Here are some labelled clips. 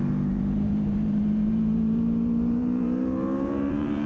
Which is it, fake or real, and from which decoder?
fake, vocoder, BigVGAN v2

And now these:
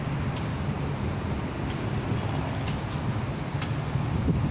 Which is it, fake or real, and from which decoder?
real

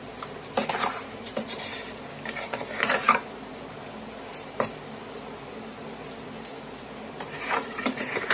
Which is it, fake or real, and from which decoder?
fake, vocoder, BigVGAN v2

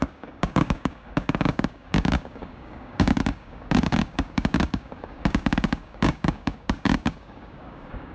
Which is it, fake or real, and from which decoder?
fake, codec, DAC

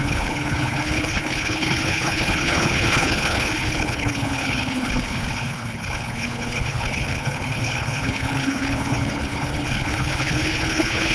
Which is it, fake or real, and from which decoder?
fake, codec, HILCodec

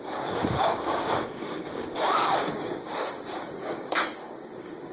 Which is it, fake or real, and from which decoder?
fake, codec, DAC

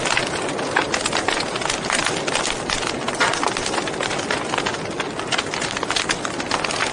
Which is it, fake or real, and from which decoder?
real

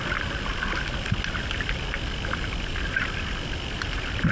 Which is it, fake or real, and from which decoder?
real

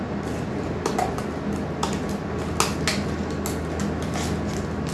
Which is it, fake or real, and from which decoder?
real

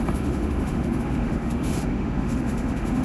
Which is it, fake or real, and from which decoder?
fake, autoencoder, DAC-VAE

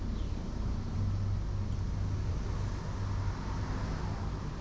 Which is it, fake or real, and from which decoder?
real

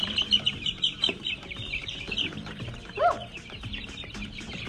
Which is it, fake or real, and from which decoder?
fake, vocoder, BigVGAN v2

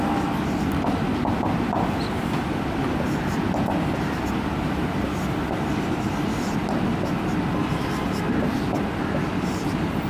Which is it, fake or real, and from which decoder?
real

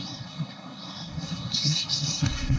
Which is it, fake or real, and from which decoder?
fake, codec, SNAC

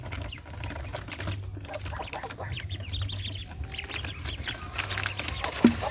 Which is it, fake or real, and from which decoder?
real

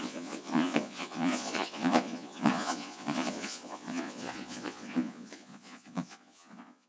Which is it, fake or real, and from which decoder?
fake, vocoder, Vocos